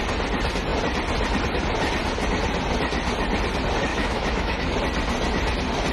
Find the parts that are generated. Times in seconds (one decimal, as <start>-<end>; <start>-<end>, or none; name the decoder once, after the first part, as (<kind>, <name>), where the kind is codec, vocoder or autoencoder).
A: 3.9-4.7 (autoencoder, DAC-VAE)